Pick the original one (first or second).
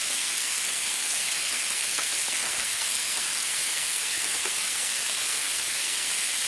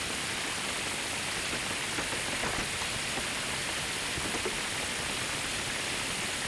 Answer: second